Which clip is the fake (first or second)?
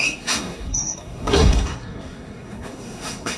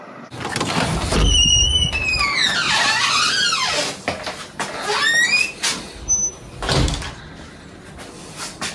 first